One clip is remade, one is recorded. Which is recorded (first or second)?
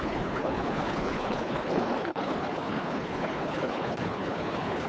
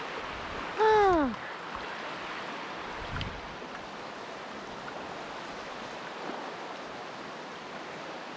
second